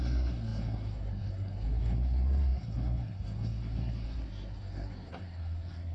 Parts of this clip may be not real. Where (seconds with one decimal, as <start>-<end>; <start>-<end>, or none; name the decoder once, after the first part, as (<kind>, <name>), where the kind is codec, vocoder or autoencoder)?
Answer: 0.0-5.9 (codec, SNAC)